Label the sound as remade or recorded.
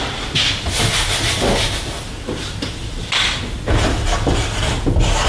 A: recorded